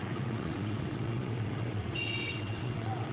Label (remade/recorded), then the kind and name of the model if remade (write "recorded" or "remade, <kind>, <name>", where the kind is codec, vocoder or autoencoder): remade, vocoder, WaveNeXt